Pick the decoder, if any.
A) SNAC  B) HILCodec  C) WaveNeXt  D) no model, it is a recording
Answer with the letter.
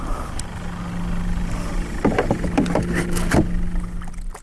D